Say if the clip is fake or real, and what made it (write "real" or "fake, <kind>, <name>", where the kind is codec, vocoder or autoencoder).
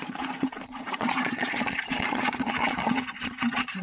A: fake, vocoder, Vocos